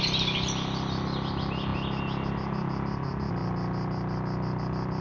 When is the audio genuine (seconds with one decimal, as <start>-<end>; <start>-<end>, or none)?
0.0-5.0